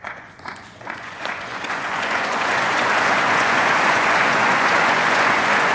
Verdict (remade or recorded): remade